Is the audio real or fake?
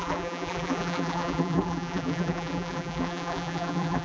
fake